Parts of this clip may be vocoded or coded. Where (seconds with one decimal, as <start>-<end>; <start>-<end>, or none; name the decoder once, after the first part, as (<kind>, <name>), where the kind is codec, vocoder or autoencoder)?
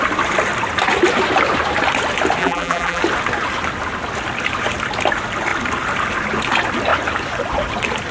2.4-3.0 (vocoder, BigVGAN v2)